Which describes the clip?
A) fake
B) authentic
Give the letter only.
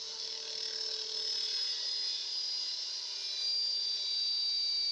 B